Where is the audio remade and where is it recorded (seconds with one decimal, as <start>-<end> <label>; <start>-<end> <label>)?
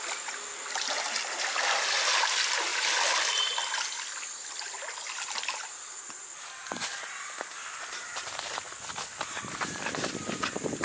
0.0-10.8 recorded